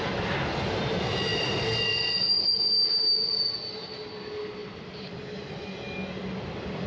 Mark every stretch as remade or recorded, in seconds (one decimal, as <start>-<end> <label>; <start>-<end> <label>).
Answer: 0.0-1.3 recorded; 1.3-2.6 remade; 2.6-4.6 recorded; 4.6-5.2 remade; 5.2-6.9 recorded